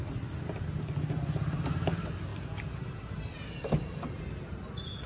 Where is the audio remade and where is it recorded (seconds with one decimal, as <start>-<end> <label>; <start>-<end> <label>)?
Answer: 0.0-5.1 recorded